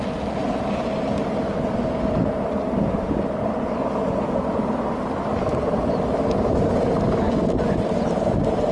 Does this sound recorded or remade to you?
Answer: recorded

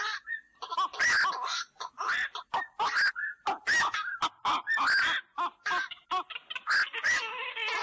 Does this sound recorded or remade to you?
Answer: recorded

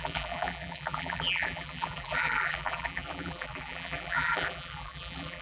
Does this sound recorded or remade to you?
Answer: remade